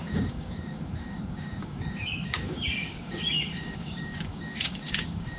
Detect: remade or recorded remade